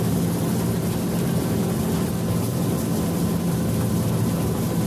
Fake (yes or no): no